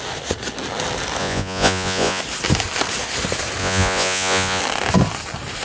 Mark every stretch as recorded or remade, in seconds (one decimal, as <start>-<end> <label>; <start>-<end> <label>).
0.0-1.2 recorded; 1.2-2.2 remade; 2.2-3.6 recorded; 3.6-4.6 remade; 4.6-5.6 recorded